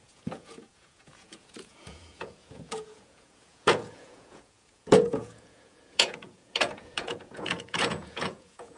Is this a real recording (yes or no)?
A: no